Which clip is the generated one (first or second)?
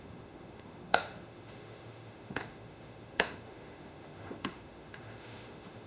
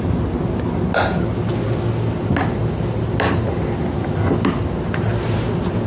first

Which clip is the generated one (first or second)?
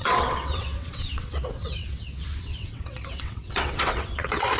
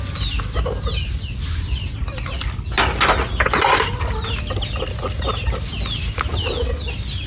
first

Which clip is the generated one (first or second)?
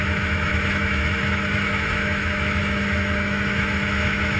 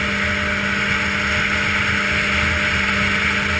first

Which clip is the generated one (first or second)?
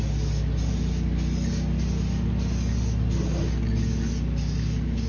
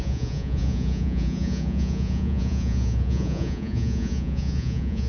second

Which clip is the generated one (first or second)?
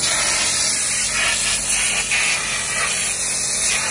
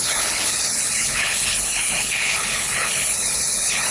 second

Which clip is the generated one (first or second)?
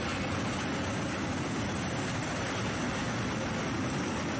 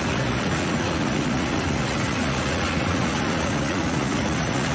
second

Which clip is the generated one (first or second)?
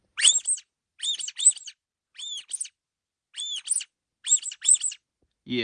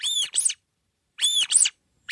second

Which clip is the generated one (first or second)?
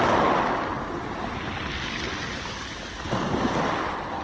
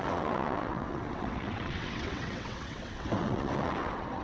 second